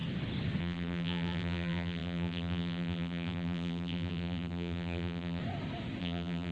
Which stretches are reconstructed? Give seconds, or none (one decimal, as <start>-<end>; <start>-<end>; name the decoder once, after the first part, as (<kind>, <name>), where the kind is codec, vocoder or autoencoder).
0.6-5.4 (vocoder, BigVGAN v2); 6.0-6.5